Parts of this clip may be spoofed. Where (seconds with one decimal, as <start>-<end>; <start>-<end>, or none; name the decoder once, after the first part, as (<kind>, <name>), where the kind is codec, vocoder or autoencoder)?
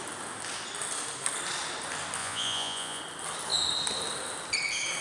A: 2.2-3.0 (vocoder, Vocos)